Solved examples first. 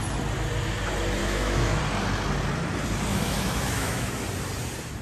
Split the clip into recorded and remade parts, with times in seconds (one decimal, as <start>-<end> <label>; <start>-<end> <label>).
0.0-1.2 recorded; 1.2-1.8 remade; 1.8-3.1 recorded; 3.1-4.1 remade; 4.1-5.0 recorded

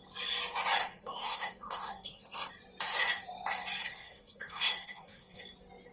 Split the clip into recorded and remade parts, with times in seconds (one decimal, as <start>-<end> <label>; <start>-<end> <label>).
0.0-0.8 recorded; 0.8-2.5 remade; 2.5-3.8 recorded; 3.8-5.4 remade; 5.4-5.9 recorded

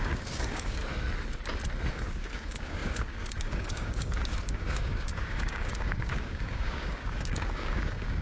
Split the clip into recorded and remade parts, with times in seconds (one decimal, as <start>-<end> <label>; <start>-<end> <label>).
0.0-0.8 remade; 0.8-1.9 recorded; 1.9-8.2 remade

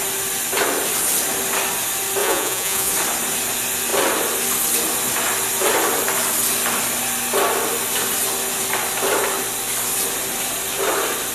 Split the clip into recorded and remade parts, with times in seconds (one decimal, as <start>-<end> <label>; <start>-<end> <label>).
0.0-2.2 recorded; 2.2-2.9 remade; 2.9-11.3 recorded

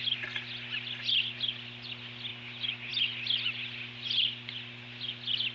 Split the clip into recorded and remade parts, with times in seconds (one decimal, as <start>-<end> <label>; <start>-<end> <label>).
0.0-5.5 recorded

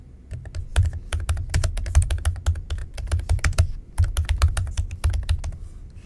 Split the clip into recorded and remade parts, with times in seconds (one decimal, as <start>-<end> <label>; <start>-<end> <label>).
0.0-2.8 recorded; 2.8-5.4 remade; 5.4-6.1 recorded